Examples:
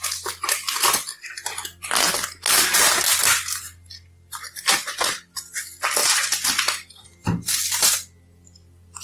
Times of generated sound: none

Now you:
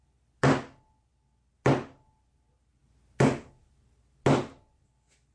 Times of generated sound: none

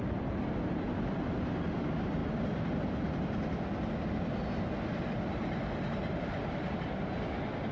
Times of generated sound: none

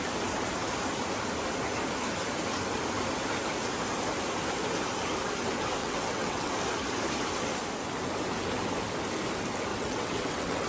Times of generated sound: 5.8-6.5 (vocoder, WaveNeXt); 9.7-10.7

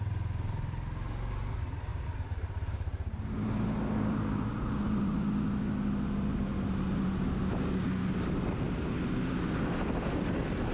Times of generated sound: none

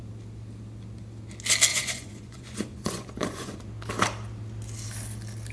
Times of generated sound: 1.7-3.6 (vocoder, Vocos)

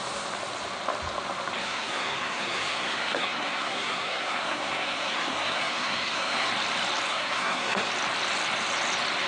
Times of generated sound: 1.6-6.5 (codec, SNAC); 7.1-7.9